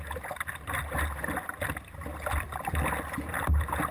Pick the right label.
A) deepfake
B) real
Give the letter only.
B